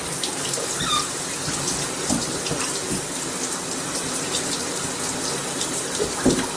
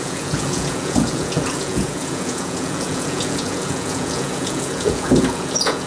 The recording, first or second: first